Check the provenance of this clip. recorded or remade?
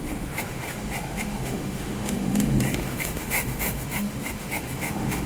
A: remade